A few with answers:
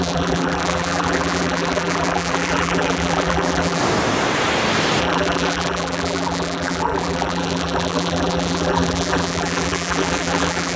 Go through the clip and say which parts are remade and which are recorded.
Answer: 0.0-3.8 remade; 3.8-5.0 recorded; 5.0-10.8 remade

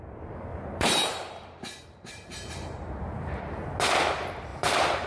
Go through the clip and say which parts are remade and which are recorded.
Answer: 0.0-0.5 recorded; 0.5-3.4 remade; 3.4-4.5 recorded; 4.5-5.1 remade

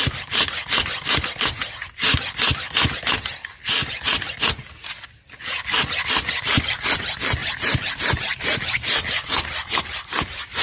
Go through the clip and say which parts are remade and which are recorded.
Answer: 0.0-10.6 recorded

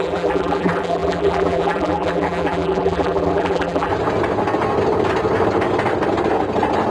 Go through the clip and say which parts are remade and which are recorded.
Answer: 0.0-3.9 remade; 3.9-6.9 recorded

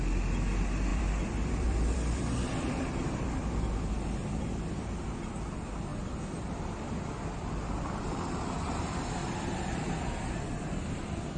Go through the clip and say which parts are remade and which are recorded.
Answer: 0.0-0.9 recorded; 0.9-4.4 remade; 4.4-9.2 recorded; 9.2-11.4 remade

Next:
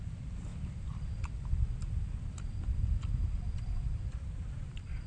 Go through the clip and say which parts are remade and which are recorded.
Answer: 0.0-0.5 remade; 0.5-3.6 recorded; 3.6-5.1 remade

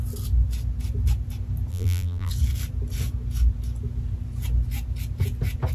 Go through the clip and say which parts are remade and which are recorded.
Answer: 0.0-1.7 recorded; 1.7-2.3 remade; 2.3-5.7 recorded

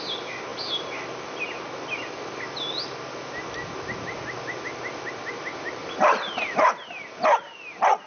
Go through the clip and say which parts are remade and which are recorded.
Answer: 0.0-5.8 recorded; 5.8-6.9 remade; 6.9-8.1 recorded